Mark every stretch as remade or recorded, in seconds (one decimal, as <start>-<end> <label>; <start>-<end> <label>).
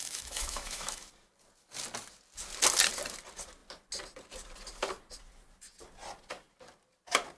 0.0-1.1 remade; 1.1-7.4 recorded